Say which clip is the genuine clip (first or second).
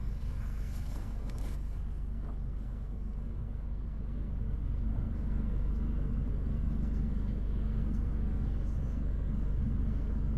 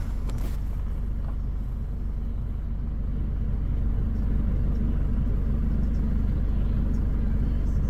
second